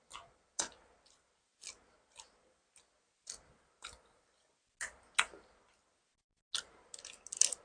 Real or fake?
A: real